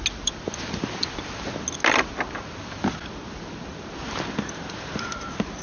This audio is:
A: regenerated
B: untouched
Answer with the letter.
B